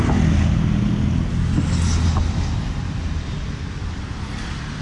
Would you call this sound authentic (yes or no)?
yes